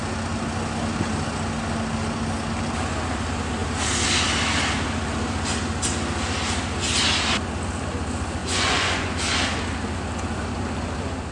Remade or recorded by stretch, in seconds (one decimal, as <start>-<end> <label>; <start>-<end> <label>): 0.0-8.4 recorded; 8.4-9.1 remade; 9.1-11.3 recorded